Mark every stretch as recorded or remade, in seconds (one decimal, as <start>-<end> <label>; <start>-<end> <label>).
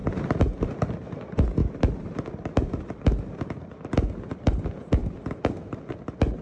0.0-0.7 remade; 0.7-1.6 recorded; 1.6-2.9 remade; 2.9-6.4 recorded